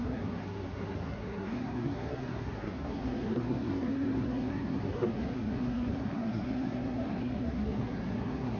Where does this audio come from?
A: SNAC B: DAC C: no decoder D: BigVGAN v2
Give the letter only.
A